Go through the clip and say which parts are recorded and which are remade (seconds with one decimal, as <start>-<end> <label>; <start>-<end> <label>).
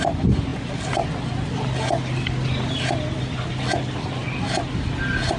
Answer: 0.0-5.4 recorded